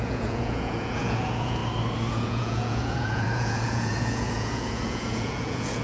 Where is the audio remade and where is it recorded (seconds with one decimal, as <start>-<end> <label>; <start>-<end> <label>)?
0.0-1.6 remade; 1.6-2.1 recorded; 2.1-5.8 remade